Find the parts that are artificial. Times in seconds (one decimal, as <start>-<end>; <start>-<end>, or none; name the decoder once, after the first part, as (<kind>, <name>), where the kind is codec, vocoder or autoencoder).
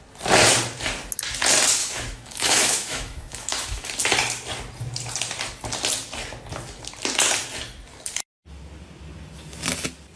1.8-3.9 (autoencoder, DAC-VAE)